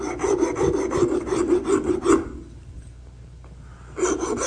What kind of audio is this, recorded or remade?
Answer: recorded